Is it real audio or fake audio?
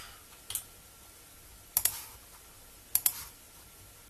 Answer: real